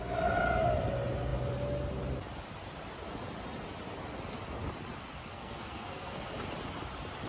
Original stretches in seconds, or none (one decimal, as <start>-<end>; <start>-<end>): 0.0-5.2; 6.3-7.3